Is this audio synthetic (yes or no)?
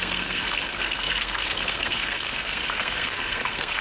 yes